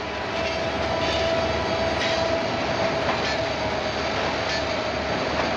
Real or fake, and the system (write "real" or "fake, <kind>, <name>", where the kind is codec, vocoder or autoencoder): real